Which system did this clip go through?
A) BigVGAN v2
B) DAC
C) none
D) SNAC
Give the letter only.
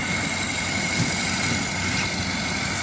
C